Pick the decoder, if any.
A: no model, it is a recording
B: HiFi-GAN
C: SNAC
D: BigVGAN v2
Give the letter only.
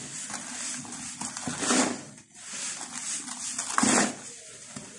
A